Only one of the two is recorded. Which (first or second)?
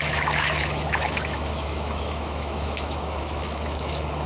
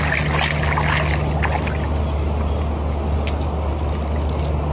second